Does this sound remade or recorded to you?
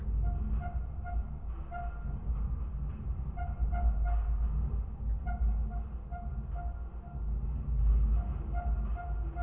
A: recorded